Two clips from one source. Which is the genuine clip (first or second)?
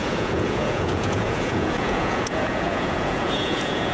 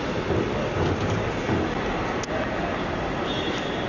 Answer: second